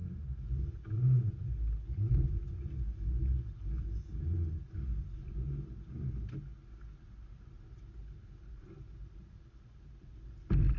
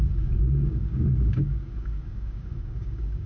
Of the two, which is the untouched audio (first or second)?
first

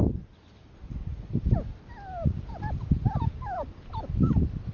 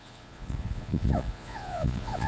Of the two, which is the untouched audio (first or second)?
first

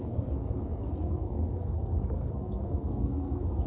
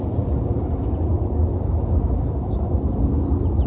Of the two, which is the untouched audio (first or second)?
second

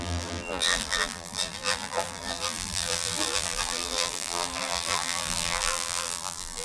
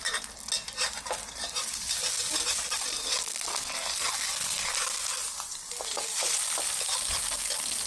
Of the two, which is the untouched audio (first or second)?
second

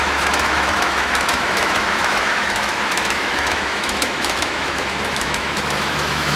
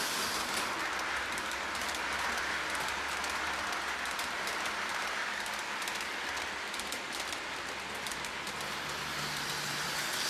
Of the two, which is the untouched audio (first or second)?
second